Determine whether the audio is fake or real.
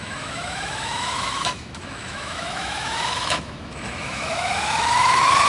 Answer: fake